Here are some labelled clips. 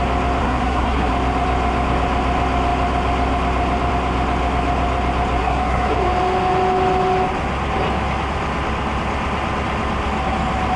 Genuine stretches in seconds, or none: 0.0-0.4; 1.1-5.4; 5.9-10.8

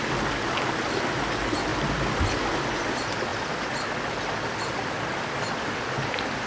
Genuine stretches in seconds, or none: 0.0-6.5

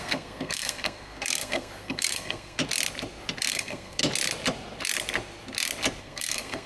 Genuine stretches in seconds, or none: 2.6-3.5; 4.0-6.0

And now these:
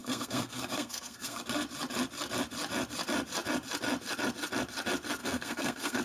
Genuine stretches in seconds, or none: 1.4-5.2